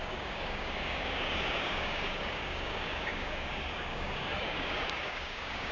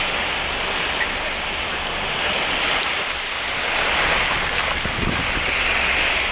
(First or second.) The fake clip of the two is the first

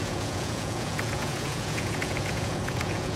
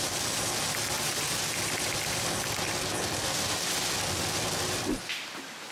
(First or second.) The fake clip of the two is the first